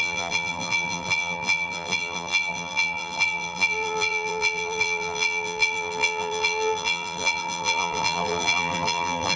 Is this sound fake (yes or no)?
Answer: yes